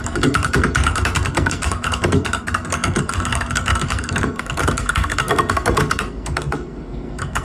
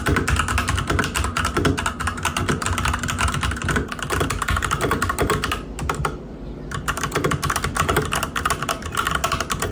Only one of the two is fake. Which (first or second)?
first